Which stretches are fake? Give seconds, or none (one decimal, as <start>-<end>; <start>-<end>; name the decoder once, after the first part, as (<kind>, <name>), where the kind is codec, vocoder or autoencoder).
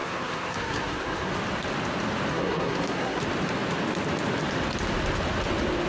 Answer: 0.0-1.3 (codec, SNAC); 2.3-3.2